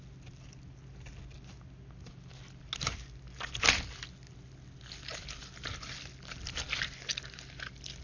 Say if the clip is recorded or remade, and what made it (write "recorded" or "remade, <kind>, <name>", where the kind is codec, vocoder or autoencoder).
recorded